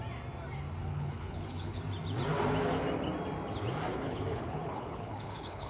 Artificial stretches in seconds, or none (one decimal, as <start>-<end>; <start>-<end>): 0.8-1.8; 3.9-5.7